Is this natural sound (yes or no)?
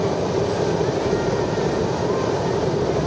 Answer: yes